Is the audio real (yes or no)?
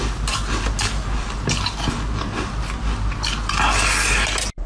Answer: yes